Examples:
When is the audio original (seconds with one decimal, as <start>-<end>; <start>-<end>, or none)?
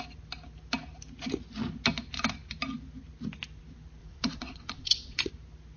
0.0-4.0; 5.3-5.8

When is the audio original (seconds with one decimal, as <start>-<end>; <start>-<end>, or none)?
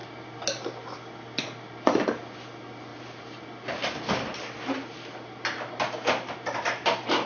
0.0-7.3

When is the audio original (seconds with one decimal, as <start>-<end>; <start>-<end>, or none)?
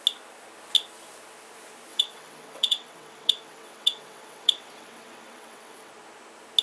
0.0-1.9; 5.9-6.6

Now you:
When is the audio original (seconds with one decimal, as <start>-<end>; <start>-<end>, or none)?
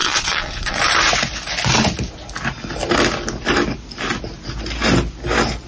0.8-5.7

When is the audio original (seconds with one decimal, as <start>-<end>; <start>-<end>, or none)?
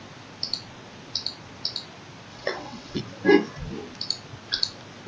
0.0-2.3; 3.0-5.1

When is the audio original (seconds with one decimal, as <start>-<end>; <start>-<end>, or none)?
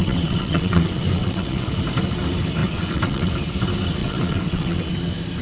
1.7-2.6; 3.3-4.0; 4.9-5.4